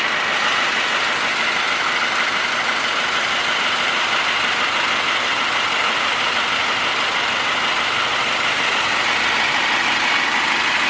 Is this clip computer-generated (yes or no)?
no